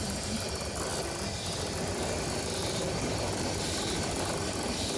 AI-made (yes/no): no